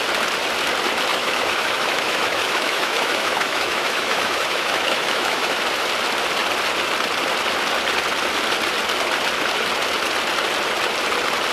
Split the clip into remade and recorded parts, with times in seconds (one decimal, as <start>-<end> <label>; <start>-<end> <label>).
0.0-1.1 recorded; 1.1-5.6 remade; 5.6-11.5 recorded